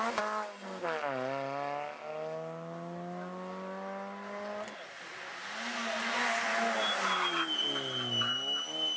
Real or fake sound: real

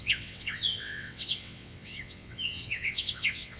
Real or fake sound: fake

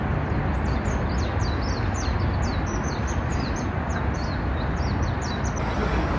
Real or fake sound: real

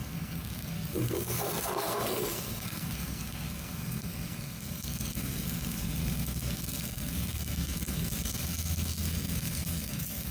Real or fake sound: fake